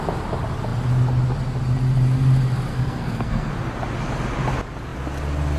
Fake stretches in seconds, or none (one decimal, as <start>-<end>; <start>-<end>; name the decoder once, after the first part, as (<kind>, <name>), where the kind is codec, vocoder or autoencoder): 2.7-3.5 (codec, SNAC)